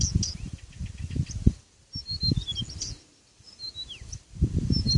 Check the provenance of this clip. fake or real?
real